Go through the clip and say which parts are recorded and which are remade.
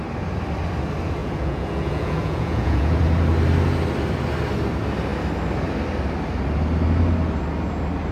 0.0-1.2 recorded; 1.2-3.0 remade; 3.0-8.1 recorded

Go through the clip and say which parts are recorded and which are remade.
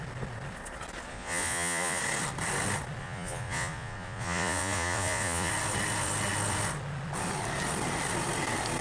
0.0-1.1 recorded; 1.1-2.0 remade; 2.0-3.0 recorded; 3.0-5.5 remade; 5.5-8.8 recorded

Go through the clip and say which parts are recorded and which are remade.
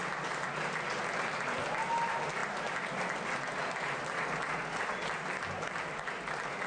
0.0-6.7 recorded